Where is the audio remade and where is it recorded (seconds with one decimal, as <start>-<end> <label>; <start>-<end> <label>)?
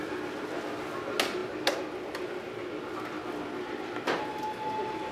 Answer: 0.0-5.1 recorded